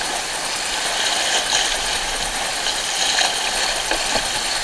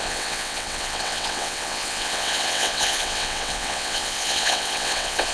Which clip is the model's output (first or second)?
second